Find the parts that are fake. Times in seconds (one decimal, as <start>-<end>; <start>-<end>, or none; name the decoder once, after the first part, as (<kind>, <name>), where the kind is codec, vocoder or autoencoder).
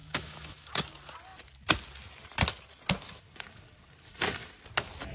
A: 0.0-0.8 (autoencoder, DAC-VAE)